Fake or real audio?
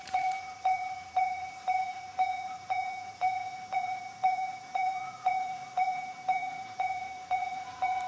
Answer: fake